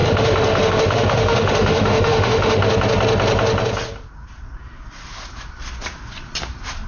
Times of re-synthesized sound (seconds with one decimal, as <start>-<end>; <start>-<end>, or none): 0.0-2.6